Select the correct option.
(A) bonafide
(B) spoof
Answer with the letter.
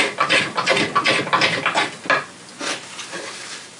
A